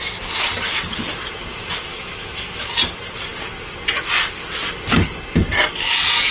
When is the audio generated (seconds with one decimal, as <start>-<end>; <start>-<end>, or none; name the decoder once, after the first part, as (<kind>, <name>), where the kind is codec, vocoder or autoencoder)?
1.9-2.7 (autoencoder, DAC-VAE)